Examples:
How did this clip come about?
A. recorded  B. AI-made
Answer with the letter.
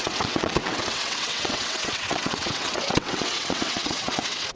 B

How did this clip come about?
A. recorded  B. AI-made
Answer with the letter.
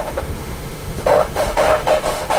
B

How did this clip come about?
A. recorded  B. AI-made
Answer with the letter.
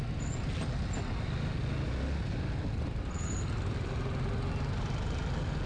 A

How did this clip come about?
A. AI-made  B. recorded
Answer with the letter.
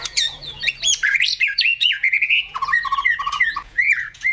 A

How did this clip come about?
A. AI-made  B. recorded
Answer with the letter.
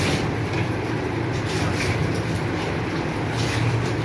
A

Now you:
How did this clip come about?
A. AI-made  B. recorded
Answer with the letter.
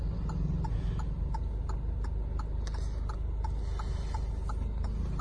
B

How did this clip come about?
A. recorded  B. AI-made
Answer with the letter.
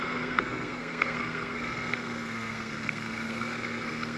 B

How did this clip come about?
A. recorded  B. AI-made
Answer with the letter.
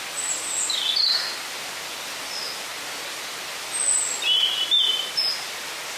A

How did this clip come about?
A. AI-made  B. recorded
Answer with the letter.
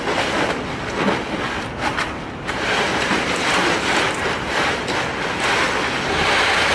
B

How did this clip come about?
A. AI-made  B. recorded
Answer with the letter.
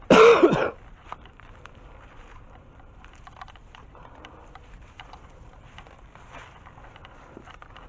A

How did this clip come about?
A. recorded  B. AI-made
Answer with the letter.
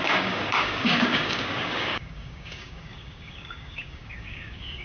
B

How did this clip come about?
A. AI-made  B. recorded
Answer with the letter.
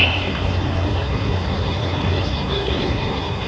A